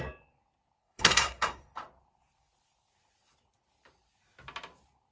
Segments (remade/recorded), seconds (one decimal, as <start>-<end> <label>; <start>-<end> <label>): 0.0-0.8 recorded; 0.8-1.6 remade; 1.6-5.1 recorded